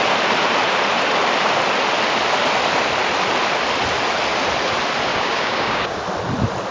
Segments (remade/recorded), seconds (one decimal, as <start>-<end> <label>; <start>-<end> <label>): 0.0-5.1 recorded; 5.1-6.0 remade; 6.0-6.7 recorded